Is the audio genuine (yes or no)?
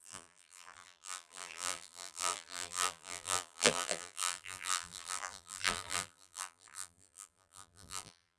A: no